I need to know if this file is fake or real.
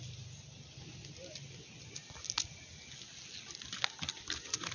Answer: real